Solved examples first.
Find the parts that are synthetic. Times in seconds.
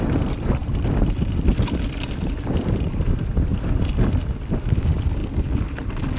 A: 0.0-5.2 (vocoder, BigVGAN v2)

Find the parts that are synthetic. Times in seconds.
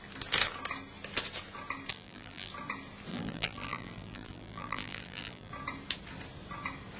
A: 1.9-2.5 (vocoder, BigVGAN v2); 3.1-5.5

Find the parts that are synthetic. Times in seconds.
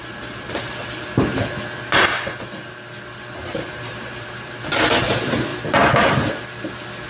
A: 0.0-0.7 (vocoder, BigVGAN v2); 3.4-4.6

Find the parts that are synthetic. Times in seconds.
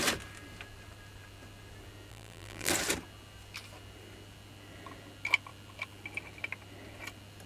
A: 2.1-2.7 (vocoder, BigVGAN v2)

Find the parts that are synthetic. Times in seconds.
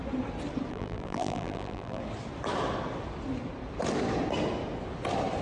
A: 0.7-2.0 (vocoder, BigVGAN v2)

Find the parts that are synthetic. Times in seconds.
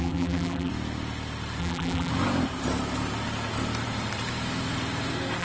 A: 0.0-0.7 (vocoder, BigVGAN v2); 1.6-2.1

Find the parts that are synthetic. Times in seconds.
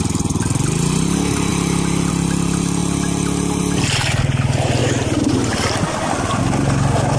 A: 2.8-3.6 (vocoder, BigVGAN v2); 4.8-6.4